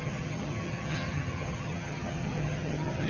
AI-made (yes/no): yes